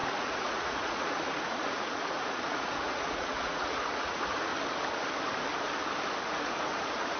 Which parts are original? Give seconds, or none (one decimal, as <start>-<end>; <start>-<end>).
4.5-6.2